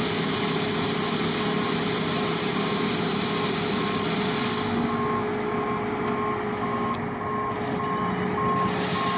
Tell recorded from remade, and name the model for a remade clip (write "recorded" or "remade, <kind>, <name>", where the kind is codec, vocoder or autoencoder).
recorded